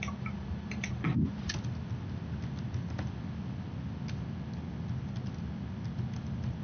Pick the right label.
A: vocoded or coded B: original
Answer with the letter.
B